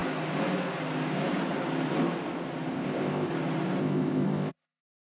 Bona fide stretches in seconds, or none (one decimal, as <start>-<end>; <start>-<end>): 0.0-2.7; 3.3-3.8; 4.8-5.2